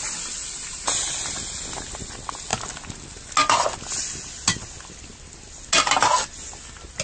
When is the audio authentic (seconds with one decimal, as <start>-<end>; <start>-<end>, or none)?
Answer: 0.0-7.0